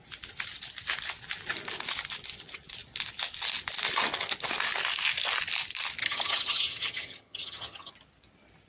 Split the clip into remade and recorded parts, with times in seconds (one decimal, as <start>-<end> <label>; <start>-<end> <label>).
0.0-6.0 recorded; 6.0-7.9 remade; 7.9-8.7 recorded